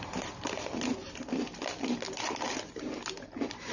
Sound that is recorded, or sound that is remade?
recorded